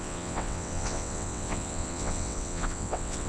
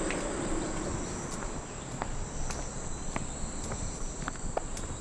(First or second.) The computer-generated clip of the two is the first